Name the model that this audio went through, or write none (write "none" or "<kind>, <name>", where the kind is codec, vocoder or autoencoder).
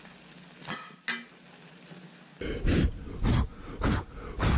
none